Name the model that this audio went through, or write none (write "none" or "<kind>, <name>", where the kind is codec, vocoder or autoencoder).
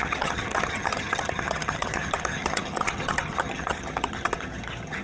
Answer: vocoder, HiFi-GAN